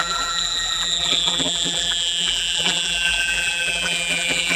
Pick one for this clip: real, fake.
fake